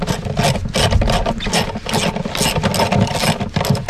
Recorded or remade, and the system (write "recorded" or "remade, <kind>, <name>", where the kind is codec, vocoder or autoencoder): recorded